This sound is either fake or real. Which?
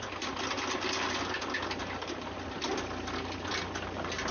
real